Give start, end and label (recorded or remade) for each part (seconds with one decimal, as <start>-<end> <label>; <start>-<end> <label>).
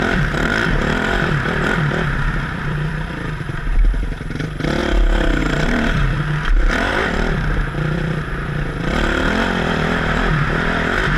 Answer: 0.0-4.8 remade; 4.8-5.4 recorded; 5.4-6.0 remade; 6.0-6.9 recorded; 6.9-11.2 remade